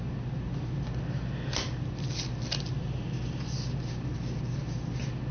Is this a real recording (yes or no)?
yes